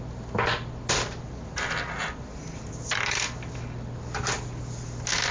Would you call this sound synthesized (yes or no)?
no